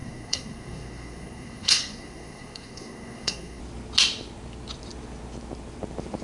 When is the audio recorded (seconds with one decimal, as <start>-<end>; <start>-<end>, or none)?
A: 3.6-6.2